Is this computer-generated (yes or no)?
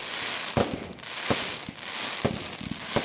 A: no